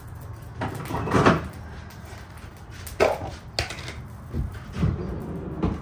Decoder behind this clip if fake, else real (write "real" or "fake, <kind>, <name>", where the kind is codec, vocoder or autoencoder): real